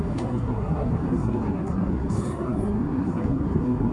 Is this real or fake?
fake